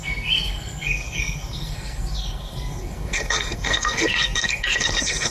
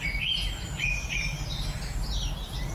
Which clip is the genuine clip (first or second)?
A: second